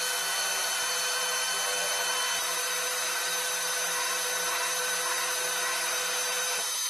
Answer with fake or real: real